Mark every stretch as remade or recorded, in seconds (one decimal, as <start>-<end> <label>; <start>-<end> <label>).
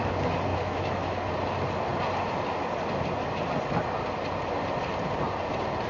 0.0-0.5 recorded; 0.5-1.1 remade; 1.1-5.9 recorded